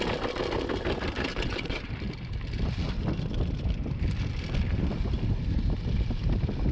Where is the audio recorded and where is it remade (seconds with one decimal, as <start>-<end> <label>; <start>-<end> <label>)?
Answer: 0.0-1.3 recorded; 1.3-1.9 remade; 1.9-6.7 recorded